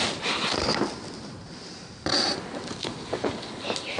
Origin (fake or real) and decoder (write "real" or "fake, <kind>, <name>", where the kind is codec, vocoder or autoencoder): real